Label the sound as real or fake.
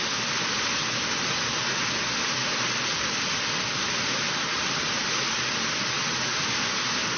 real